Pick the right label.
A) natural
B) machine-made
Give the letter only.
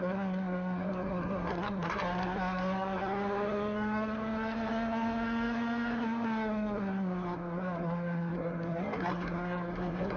B